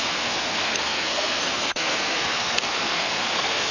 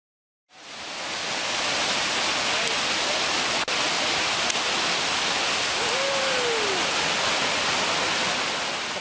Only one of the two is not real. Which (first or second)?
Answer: first